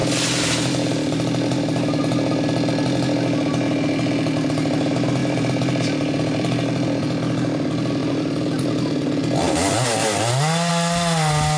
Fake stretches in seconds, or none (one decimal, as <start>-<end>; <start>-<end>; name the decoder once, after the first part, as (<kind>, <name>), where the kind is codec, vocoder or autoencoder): 5.2-7.2 (vocoder, BigVGAN v2); 8.0-8.7

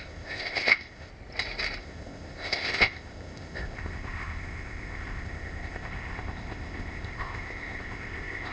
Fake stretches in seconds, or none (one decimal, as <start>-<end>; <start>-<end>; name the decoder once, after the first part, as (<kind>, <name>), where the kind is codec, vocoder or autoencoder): 0.0-1.1 (codec, ZipCodec); 1.8-8.5

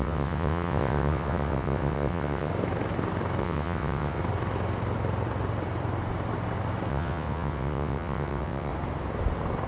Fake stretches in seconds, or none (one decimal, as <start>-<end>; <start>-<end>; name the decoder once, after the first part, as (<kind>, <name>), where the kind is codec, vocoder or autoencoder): 0.0-2.5 (vocoder, WaveNeXt); 3.4-4.2; 6.9-8.7

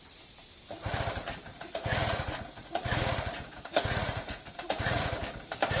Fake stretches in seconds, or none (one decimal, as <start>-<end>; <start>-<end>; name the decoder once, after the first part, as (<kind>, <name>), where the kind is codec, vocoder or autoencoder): 1.5-5.0 (vocoder, Vocos)